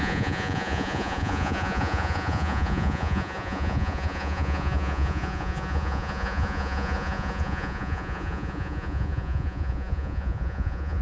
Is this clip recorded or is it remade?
remade